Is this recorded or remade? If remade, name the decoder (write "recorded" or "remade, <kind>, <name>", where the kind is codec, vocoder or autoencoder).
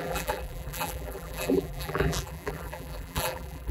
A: remade, vocoder, BigVGAN v2